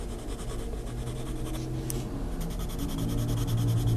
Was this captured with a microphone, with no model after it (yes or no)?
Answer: yes